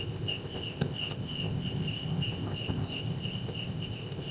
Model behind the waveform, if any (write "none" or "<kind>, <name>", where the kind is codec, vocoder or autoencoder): codec, ZipCodec